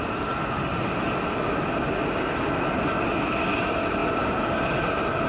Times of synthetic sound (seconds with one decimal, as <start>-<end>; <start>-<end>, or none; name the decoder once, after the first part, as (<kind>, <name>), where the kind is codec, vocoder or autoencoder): none